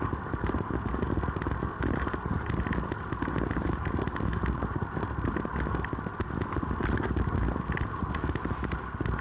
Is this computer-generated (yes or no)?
no